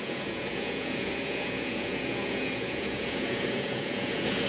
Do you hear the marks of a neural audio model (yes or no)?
yes